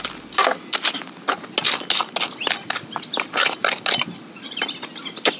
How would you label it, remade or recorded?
recorded